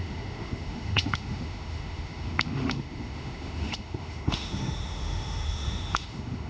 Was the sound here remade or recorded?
remade